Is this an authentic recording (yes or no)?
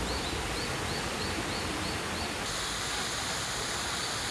yes